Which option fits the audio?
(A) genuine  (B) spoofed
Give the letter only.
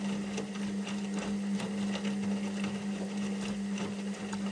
A